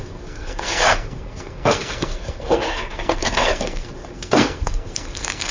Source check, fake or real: fake